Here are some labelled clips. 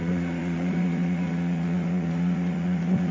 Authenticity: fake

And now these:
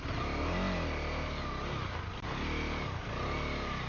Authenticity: real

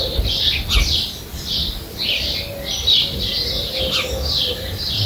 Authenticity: real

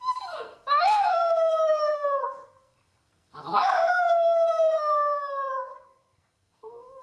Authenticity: fake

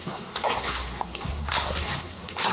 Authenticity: fake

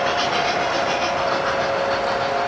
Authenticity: real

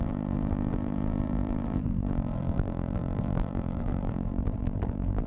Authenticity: fake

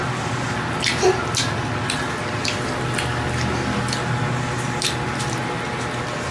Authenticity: real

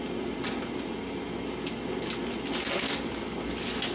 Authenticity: real